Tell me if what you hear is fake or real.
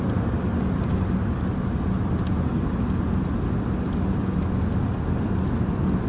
real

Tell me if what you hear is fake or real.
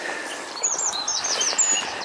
real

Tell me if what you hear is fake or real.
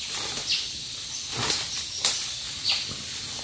real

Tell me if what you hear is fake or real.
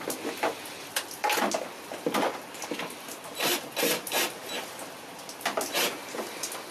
real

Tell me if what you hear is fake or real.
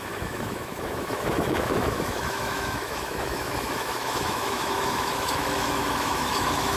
fake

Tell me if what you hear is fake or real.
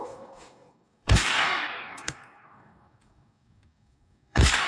fake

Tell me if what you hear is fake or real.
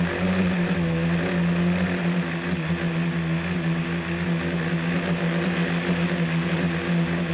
real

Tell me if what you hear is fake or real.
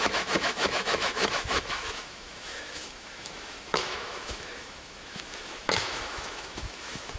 fake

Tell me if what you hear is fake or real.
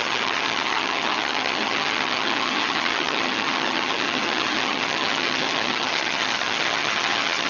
fake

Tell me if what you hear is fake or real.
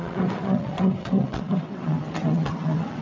fake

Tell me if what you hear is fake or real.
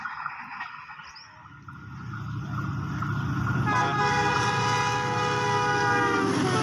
real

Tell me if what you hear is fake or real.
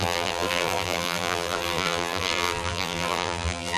fake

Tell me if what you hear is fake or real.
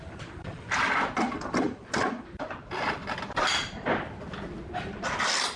real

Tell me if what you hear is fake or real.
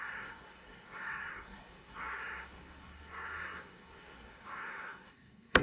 fake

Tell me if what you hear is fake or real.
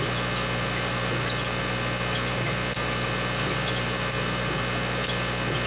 real